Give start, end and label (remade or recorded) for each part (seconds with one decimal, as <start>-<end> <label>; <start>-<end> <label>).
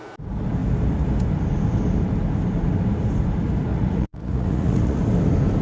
0.0-3.7 recorded; 3.7-5.0 remade; 5.0-5.6 recorded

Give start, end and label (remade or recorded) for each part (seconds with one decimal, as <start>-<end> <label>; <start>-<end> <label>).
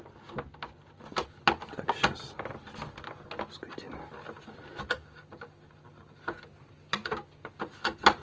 0.0-5.2 recorded; 5.2-5.9 remade; 5.9-7.0 recorded; 7.0-7.5 remade; 7.5-8.2 recorded